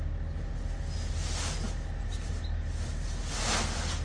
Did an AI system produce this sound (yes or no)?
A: no